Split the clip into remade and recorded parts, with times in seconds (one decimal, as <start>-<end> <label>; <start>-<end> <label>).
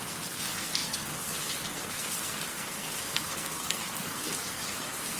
0.0-5.2 remade